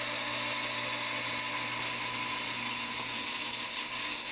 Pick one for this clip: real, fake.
real